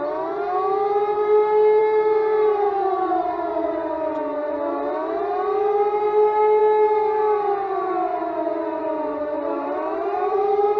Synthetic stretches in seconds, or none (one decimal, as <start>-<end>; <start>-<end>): 1.8-4.2; 8.8-10.8